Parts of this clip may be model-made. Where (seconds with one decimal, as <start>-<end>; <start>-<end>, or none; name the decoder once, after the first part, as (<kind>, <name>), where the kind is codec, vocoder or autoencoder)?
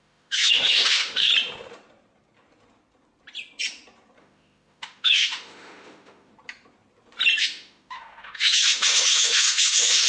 0.0-1.3 (autoencoder, DAC-VAE); 4.2-6.3; 7.4-10.1